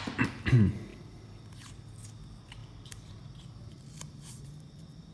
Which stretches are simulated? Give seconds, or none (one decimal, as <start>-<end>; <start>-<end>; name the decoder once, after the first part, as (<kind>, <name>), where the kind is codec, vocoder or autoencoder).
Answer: 0.9-1.7 (vocoder, BigVGAN v2); 2.6-5.1